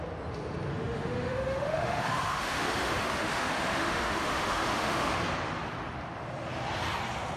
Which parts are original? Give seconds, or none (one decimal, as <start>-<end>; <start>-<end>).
0.0-0.7; 5.1-7.4